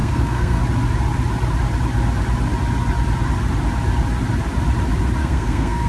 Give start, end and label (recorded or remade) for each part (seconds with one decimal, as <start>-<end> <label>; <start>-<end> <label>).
0.0-0.6 remade; 0.6-5.2 recorded; 5.2-5.9 remade